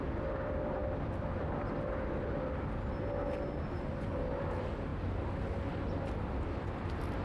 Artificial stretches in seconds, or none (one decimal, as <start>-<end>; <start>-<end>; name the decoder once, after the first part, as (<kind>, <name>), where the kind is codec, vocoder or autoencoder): none